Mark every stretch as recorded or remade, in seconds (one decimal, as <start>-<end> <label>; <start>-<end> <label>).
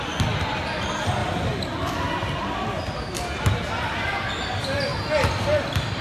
0.0-6.0 recorded